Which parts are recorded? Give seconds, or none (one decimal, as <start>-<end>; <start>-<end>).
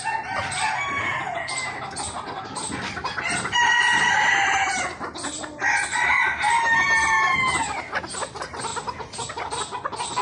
0.0-10.2